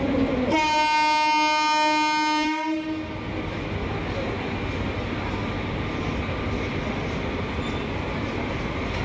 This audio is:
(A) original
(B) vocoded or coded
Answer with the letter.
A